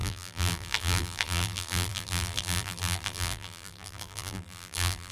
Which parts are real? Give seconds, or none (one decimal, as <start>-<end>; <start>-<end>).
none